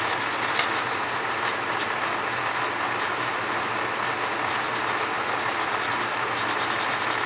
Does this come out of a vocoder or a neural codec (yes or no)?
no